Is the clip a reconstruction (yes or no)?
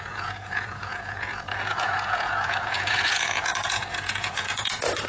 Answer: yes